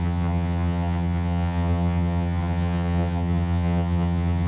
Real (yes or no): no